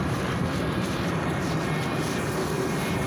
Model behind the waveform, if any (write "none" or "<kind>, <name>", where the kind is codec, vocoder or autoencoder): vocoder, BigVGAN v2